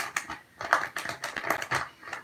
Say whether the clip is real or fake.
real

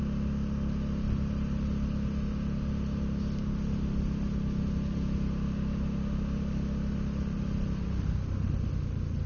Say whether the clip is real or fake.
real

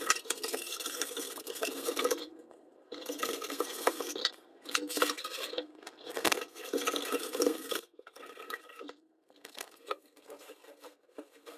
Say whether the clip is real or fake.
fake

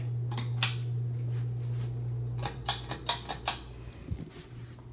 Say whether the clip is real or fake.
real